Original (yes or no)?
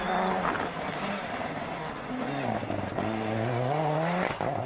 yes